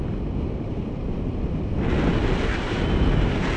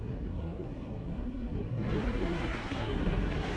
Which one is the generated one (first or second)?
second